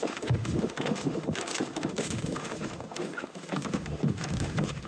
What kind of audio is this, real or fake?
fake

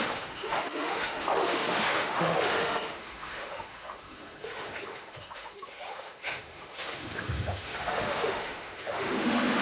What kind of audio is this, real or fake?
fake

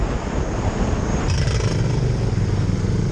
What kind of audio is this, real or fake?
real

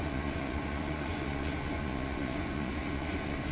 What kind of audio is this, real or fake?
fake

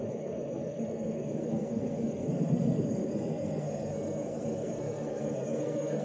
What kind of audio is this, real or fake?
fake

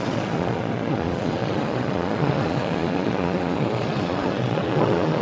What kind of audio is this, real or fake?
fake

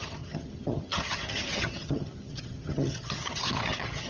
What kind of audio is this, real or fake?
fake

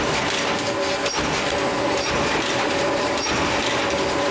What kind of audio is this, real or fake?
real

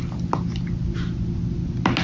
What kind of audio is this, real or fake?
real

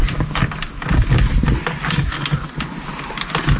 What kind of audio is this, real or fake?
real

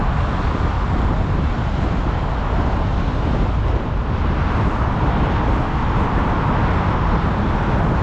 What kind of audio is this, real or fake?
real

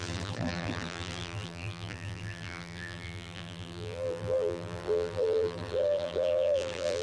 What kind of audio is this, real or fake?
fake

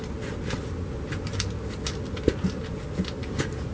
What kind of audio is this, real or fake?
real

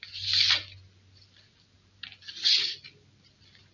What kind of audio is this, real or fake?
real